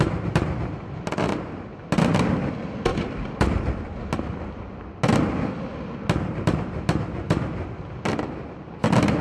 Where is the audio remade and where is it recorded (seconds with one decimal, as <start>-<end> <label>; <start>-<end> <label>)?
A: 0.0-9.2 recorded